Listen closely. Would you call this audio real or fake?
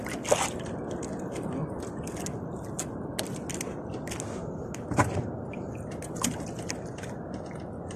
real